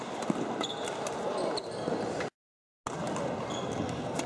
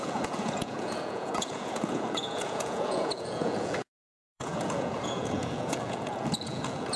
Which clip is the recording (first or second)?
first